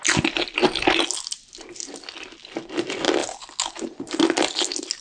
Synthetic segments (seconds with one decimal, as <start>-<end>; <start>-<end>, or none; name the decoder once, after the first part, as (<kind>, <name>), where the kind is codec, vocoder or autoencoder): none